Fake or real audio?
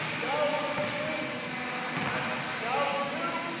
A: real